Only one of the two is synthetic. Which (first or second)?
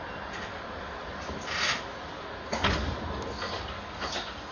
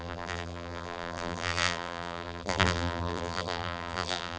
second